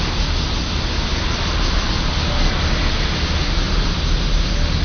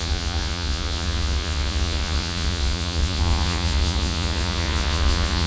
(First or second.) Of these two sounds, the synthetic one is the second